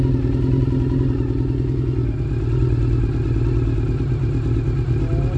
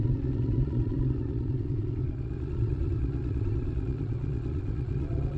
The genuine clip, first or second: first